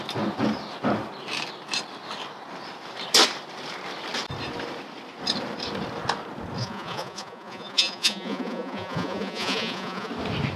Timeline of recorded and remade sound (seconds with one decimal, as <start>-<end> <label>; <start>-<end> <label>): 0.0-6.6 recorded; 6.6-10.1 remade; 10.1-10.6 recorded